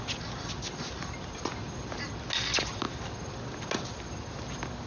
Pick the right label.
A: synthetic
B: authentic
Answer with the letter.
B